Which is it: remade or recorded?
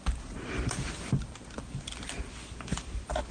recorded